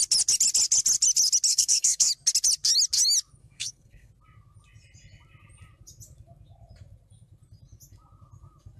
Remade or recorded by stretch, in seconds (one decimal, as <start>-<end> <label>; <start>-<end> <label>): 0.0-1.5 recorded; 1.5-2.1 remade; 2.1-3.4 recorded; 3.4-4.1 remade; 4.1-8.8 recorded